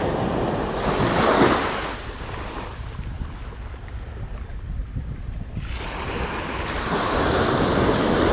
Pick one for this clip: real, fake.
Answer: real